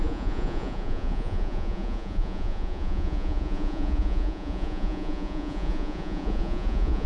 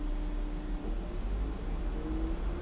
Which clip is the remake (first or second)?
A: first